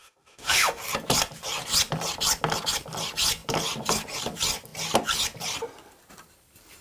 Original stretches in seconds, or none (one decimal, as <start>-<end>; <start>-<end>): 0.8-6.8